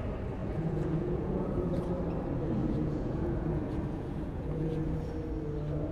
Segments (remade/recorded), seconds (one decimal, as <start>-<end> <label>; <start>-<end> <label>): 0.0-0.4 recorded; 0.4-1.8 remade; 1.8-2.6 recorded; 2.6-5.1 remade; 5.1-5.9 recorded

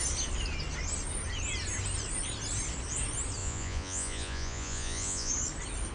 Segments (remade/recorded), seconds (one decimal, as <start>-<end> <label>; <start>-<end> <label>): 0.0-3.4 recorded; 3.4-5.3 remade; 5.3-5.9 recorded

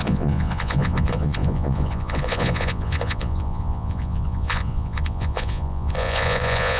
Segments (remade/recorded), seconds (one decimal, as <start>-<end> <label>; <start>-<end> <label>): 0.0-6.8 remade

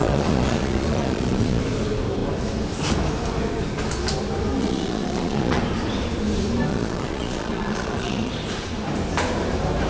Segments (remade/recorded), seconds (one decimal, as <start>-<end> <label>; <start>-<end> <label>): 0.0-1.6 remade; 1.6-4.6 recorded; 4.6-5.6 remade; 5.6-6.7 recorded; 6.7-8.3 remade; 8.3-9.9 recorded

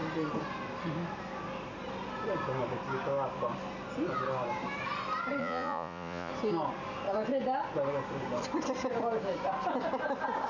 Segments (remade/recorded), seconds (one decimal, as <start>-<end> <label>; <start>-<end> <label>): 0.0-5.4 recorded; 5.4-6.3 remade; 6.3-10.5 recorded

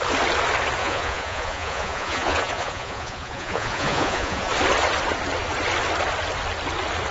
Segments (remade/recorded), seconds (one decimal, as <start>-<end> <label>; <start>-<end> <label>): 0.0-0.8 recorded; 0.8-4.5 remade; 4.5-7.1 recorded